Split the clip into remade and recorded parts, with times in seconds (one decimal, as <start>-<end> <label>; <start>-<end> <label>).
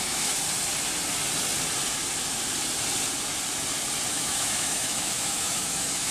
0.0-0.4 remade; 0.4-4.1 recorded; 4.1-6.1 remade